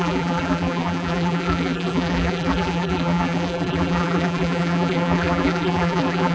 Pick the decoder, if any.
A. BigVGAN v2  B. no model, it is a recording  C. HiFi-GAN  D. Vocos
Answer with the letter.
A